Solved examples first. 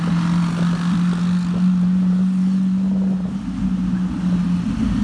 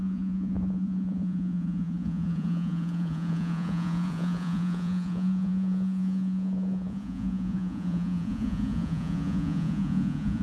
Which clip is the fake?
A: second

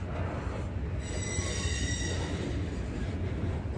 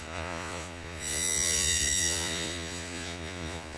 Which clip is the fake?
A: second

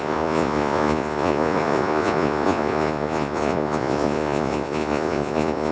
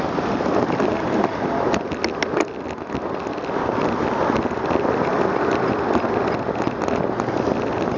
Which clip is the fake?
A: first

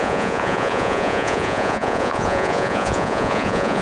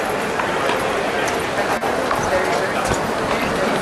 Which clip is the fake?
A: first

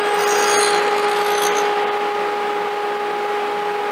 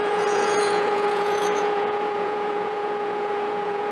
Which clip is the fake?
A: second